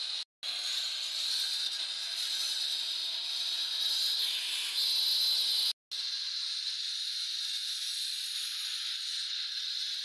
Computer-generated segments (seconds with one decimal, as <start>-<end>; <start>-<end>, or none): 3.0-3.9; 6.8-10.0

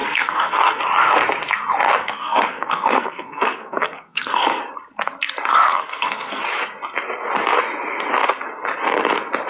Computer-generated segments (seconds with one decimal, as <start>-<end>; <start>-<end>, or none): 0.0-0.8; 2.0-4.6; 5.7-6.4

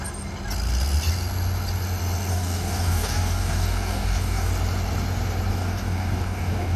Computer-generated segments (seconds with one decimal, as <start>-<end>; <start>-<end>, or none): 2.3-4.5; 5.5-6.8

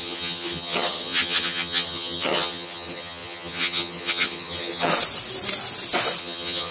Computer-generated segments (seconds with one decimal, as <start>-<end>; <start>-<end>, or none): 0.0-4.9; 6.2-6.7

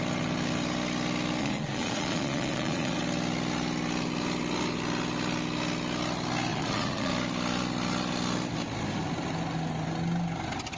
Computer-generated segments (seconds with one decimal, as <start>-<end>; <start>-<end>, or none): 1.4-3.0; 6.5-7.1

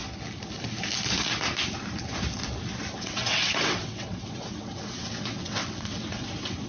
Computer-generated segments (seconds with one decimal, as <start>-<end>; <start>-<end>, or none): 3.0-6.7